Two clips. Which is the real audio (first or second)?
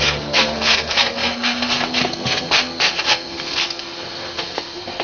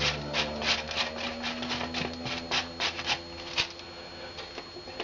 second